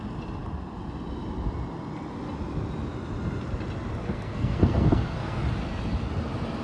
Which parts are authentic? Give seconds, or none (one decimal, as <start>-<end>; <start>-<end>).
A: 0.0-4.0; 5.4-6.6